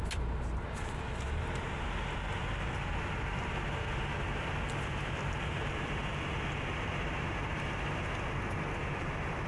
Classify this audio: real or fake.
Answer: real